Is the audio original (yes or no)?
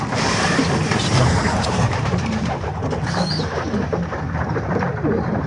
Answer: no